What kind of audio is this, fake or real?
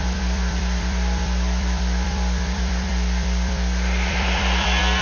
fake